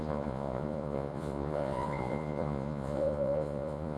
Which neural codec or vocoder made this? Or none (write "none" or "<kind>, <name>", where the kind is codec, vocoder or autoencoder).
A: vocoder, Vocos